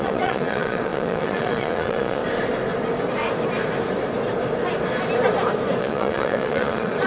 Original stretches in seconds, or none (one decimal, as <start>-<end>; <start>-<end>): 2.2-5.8